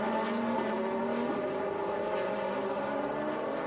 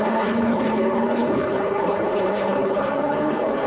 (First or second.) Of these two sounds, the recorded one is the first